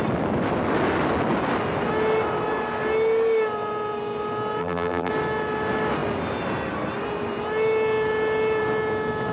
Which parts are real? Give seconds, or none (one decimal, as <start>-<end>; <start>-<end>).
0.0-4.6; 5.1-9.3